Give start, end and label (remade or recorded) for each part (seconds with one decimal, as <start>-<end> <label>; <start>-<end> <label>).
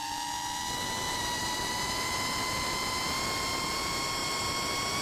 0.0-5.0 recorded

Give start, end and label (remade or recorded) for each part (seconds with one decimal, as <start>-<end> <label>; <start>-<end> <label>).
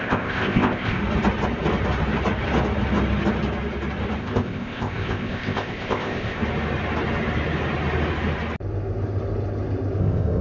0.0-1.0 remade; 1.0-4.2 recorded; 4.2-6.4 remade; 6.4-10.0 recorded; 10.0-10.4 remade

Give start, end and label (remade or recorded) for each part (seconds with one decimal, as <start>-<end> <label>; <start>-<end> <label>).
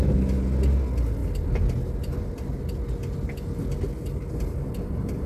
0.0-5.3 recorded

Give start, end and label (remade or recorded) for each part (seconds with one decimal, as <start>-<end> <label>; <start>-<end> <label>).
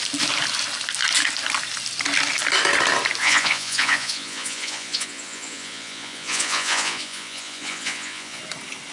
0.0-3.2 recorded; 3.2-8.4 remade; 8.4-8.9 recorded